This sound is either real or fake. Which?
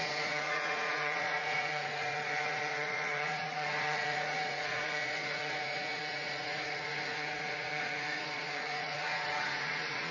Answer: fake